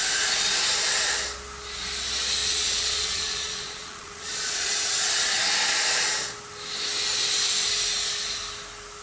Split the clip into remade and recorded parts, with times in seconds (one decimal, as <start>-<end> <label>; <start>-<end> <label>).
0.0-2.4 recorded; 2.4-4.7 remade; 4.7-9.0 recorded